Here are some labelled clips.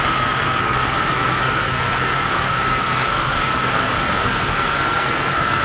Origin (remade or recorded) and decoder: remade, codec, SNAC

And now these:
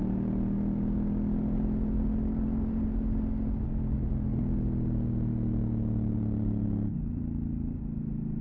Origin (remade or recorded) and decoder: recorded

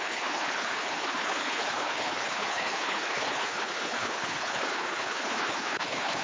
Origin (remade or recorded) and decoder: remade, codec, HILCodec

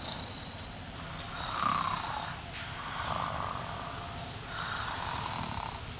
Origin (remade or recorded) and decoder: recorded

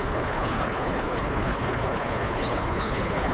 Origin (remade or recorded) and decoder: remade, codec, HILCodec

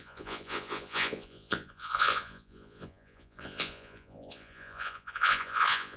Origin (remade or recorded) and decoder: remade, vocoder, Vocos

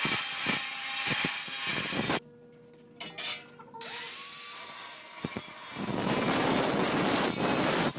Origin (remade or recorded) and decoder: recorded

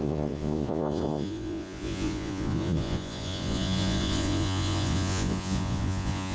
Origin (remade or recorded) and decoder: remade, vocoder, Vocos